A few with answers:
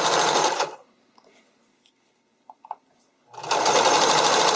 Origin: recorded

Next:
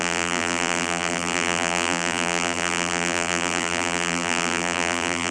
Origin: remade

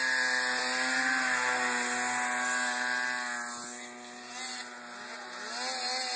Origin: recorded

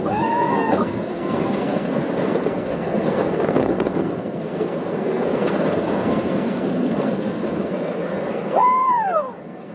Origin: remade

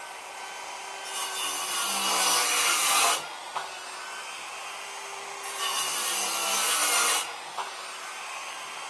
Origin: recorded